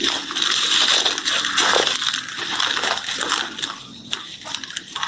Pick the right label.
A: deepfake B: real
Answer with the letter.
B